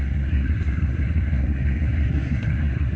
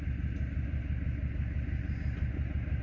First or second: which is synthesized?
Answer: first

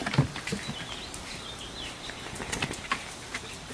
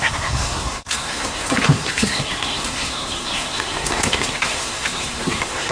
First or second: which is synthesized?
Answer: second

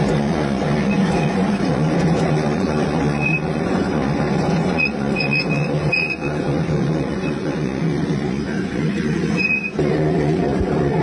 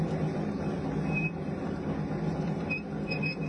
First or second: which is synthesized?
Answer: first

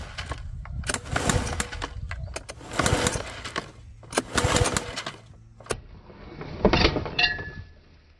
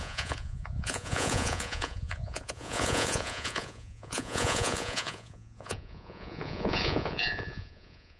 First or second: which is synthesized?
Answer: second